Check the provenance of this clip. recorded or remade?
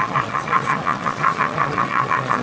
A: remade